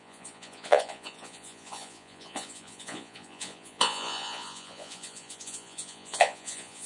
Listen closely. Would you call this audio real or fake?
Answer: fake